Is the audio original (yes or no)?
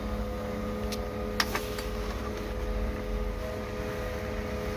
yes